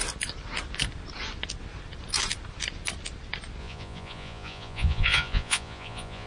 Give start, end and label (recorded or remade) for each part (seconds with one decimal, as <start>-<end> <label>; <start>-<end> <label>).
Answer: 0.0-3.6 recorded; 3.6-6.3 remade

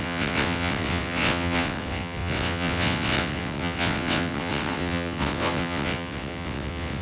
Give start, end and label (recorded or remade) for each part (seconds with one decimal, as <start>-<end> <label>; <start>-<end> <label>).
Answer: 0.0-7.0 remade

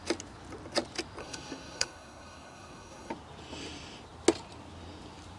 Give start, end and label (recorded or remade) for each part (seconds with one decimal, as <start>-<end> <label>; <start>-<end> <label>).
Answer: 0.0-1.2 recorded; 1.2-3.1 remade; 3.1-5.4 recorded

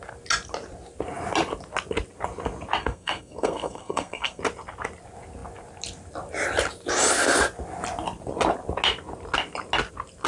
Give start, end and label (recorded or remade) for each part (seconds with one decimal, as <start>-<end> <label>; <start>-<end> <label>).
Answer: 0.0-2.8 recorded; 2.8-4.4 remade; 4.4-10.3 recorded

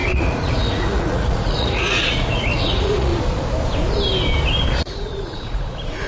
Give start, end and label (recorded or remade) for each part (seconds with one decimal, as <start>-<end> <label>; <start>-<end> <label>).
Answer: 0.0-3.1 remade; 3.1-4.8 recorded; 4.8-6.1 remade

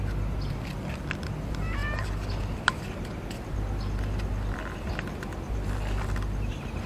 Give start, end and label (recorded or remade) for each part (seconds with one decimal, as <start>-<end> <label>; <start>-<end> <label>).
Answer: 0.0-6.9 recorded

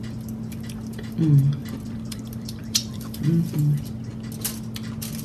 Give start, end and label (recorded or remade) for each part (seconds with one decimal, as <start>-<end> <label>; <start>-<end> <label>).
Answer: 0.0-1.6 recorded; 1.6-3.2 remade; 3.2-5.2 recorded